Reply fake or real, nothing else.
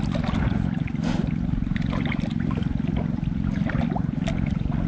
real